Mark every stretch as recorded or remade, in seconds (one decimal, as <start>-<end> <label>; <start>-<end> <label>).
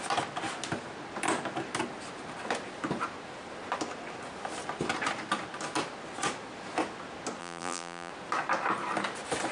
0.0-7.4 recorded; 7.4-8.1 remade; 8.1-9.5 recorded